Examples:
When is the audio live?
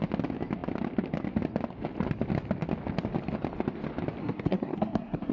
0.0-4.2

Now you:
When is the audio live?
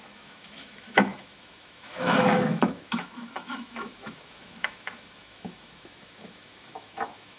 none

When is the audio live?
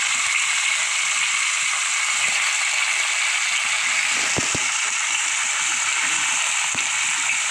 0.8-4.6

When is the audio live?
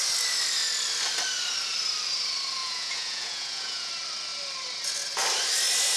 0.0-2.6; 3.9-6.0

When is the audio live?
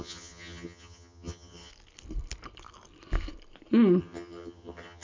1.7-4.0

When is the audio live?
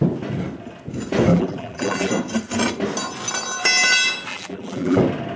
0.0-1.3; 2.1-4.3; 5.0-5.4